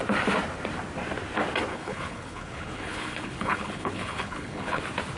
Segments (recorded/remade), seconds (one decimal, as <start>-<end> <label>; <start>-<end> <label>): 0.0-1.7 recorded; 1.7-4.8 remade; 4.8-5.2 recorded